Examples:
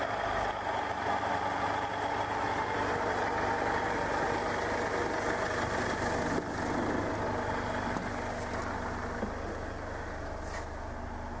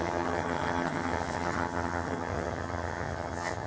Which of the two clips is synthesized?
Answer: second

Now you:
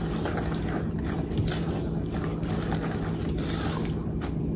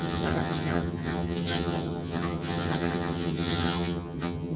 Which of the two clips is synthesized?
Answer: second